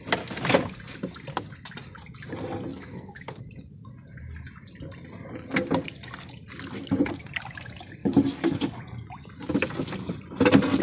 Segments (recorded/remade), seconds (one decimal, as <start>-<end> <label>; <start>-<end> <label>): 0.0-2.7 recorded; 2.7-3.4 remade; 3.4-8.0 recorded; 8.0-8.8 remade; 8.8-10.8 recorded